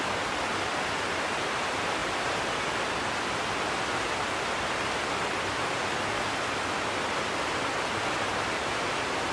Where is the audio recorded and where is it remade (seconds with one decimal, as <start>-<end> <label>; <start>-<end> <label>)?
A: 0.0-9.3 recorded

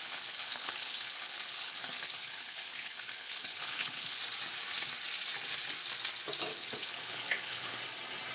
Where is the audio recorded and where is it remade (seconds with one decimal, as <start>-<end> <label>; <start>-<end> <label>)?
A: 0.0-0.4 recorded; 0.4-4.2 remade; 4.2-6.5 recorded; 6.5-7.8 remade; 7.8-8.3 recorded

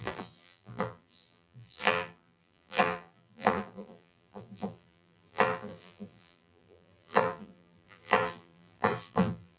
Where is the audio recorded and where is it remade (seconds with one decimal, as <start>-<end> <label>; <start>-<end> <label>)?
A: 0.0-9.6 remade

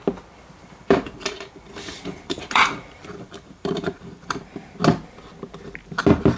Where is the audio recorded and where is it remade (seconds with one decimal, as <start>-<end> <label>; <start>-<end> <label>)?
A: 0.0-0.6 recorded; 0.6-4.4 remade; 4.4-6.4 recorded